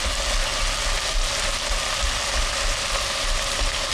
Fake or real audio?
real